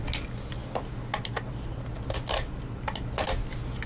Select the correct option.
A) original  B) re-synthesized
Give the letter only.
A